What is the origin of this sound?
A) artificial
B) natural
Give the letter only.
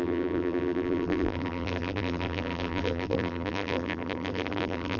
A